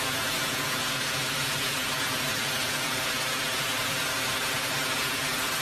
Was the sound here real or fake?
real